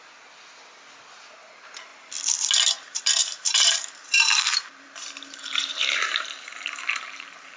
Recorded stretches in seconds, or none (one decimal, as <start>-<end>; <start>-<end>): 0.0-3.2